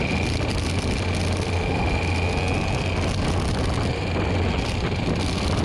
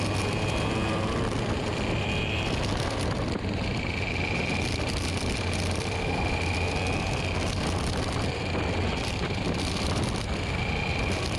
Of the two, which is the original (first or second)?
first